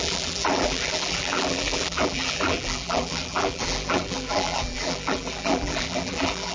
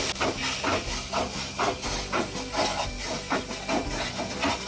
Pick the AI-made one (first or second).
first